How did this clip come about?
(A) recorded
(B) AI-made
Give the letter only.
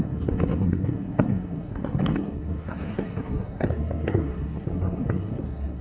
B